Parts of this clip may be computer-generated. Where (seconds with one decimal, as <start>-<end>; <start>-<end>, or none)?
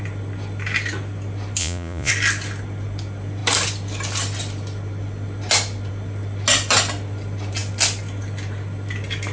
1.6-2.1